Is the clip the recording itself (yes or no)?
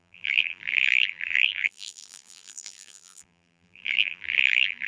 no